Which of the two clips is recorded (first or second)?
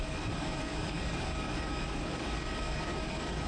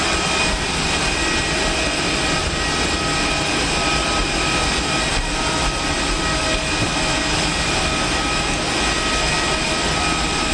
second